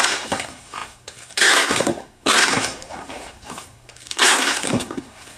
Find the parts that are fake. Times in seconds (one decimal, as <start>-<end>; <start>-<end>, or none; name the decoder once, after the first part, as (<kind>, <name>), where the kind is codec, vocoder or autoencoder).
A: 0.0-5.4 (codec, SNAC)